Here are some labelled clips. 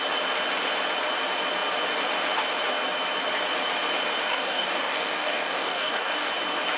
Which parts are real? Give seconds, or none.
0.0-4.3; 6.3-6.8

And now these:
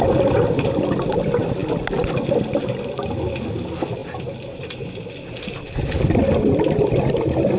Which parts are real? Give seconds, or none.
0.0-7.6